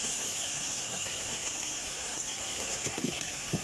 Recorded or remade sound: remade